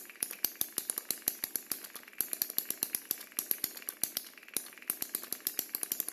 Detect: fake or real real